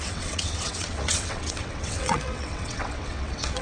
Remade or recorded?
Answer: remade